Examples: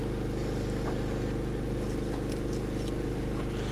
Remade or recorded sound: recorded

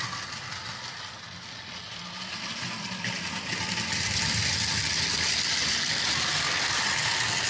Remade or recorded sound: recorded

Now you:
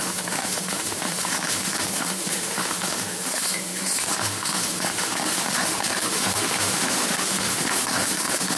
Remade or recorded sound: remade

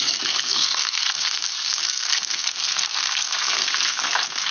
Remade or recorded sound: remade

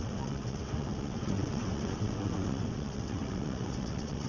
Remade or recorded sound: remade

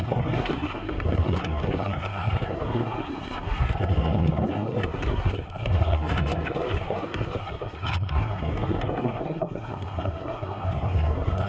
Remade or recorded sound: remade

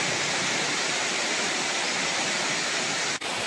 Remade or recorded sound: recorded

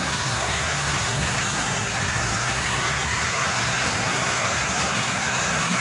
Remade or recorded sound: remade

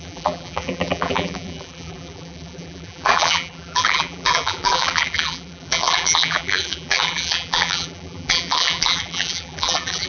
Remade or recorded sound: remade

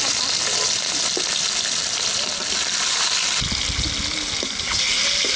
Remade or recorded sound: recorded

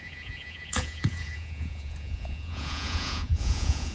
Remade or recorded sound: remade